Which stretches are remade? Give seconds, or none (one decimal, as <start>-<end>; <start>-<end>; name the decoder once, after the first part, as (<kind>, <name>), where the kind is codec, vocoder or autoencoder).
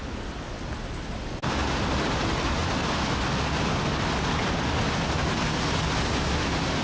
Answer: none